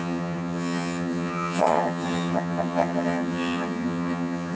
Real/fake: fake